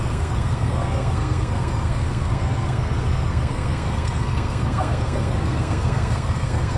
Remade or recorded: remade